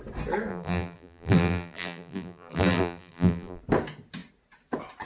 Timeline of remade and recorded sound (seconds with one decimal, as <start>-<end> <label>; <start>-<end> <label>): 0.0-0.5 recorded; 0.5-3.6 remade; 3.6-5.1 recorded